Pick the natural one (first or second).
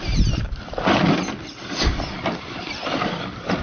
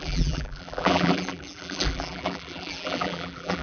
first